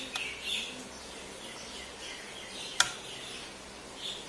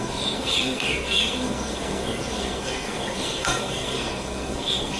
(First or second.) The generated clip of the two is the second